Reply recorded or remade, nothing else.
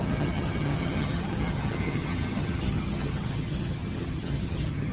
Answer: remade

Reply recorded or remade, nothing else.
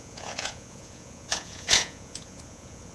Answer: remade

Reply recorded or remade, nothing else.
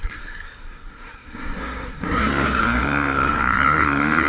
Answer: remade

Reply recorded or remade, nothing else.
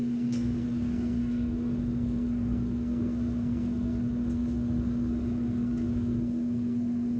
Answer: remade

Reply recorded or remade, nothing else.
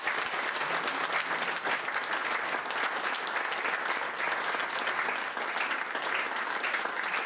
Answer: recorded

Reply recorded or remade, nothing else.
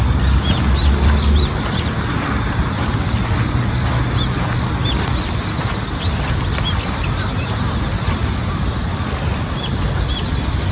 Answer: recorded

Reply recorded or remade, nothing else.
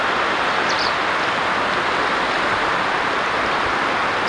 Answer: recorded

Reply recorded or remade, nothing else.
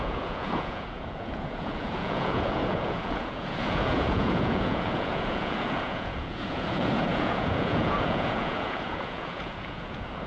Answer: remade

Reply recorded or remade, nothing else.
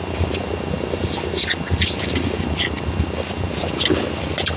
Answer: recorded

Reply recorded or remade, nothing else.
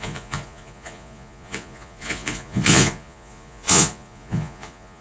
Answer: remade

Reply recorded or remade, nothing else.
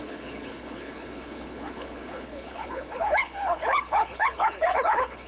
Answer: remade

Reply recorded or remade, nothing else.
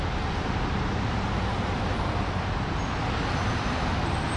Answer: recorded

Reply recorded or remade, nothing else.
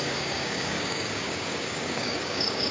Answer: remade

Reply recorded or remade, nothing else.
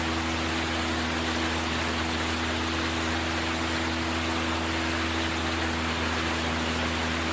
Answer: recorded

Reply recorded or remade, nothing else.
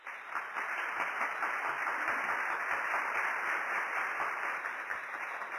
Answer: remade